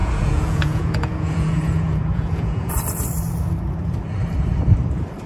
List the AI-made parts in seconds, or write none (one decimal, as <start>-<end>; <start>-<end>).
0.0-2.7

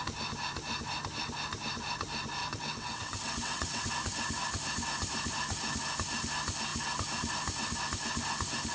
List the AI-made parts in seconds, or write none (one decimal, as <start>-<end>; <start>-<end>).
2.4-3.9

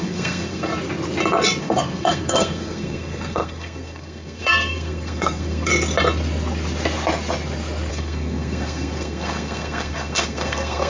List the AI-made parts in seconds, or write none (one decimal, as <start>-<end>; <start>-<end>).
0.0-0.7; 1.6-5.7; 7.9-10.9

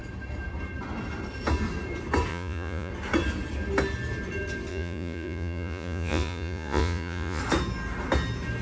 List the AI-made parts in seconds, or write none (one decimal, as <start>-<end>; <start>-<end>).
2.3-2.9; 4.7-7.4

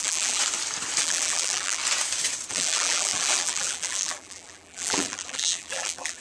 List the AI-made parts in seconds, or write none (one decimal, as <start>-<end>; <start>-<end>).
0.0-0.4; 1.0-1.8; 2.5-6.2

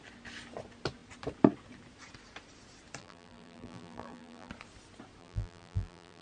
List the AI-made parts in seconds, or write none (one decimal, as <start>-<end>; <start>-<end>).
3.0-4.5; 5.2-6.2

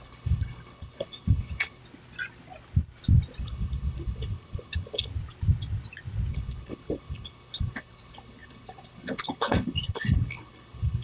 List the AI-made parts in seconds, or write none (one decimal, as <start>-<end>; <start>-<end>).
0.0-1.8; 3.4-5.1; 6.3-11.0

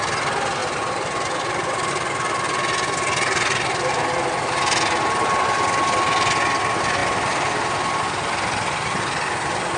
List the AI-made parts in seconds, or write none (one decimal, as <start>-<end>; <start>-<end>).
none